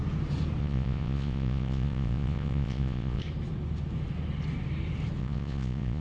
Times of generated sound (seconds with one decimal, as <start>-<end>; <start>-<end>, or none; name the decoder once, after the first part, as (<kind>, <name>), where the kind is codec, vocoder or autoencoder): 0.6-3.2 (vocoder, Vocos); 5.2-6.0